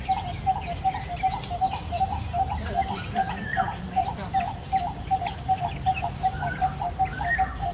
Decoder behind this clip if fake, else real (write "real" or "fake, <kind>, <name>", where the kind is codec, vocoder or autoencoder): fake, vocoder, BigVGAN v2